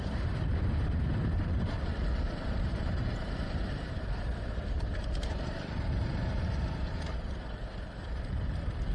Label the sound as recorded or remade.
remade